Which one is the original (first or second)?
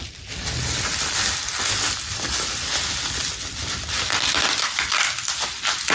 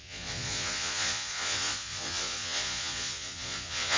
first